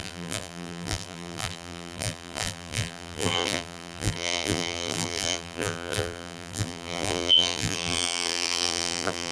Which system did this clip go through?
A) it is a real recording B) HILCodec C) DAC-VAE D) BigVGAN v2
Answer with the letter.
D